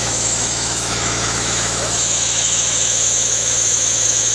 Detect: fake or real fake